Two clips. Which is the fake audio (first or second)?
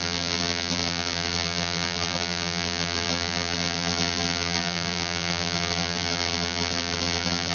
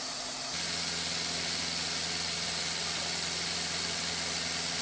first